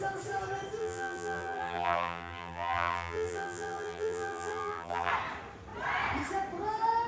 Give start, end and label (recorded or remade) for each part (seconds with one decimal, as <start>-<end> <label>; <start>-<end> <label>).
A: 0.0-0.8 recorded; 0.8-5.1 remade; 5.1-7.1 recorded